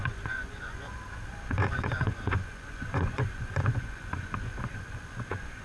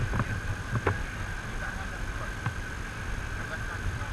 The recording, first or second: second